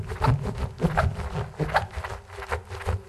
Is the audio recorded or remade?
recorded